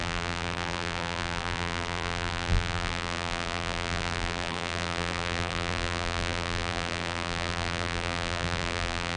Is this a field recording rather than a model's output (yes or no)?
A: no